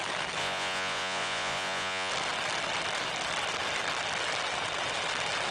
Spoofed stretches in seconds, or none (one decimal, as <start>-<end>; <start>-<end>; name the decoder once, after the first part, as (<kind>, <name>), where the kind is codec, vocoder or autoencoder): 0.4-2.1 (vocoder, Vocos)